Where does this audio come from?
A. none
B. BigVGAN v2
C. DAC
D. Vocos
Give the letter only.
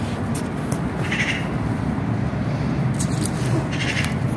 A